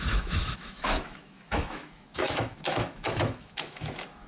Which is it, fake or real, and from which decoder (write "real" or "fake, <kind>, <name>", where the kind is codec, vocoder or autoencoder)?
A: fake, autoencoder, DAC-VAE